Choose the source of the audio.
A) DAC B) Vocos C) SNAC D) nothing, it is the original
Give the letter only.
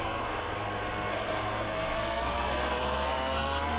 C